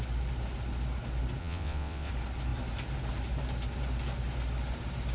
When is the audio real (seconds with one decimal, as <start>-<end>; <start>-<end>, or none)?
0.0-1.4; 2.1-5.1